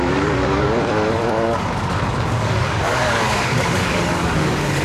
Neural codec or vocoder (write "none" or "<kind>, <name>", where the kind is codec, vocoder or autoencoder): codec, DAC